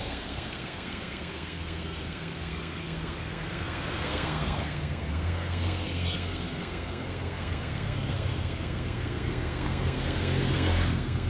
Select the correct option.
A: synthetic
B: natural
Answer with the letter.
A